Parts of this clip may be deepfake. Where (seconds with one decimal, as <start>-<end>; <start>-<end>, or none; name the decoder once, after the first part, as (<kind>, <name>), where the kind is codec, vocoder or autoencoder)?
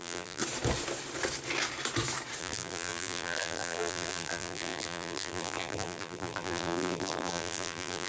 0.0-0.4 (vocoder, BigVGAN v2); 2.4-8.1